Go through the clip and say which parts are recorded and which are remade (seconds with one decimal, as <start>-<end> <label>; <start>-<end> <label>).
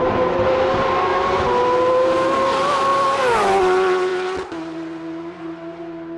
0.0-6.2 recorded